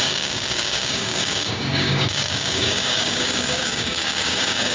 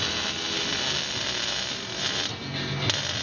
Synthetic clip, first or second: first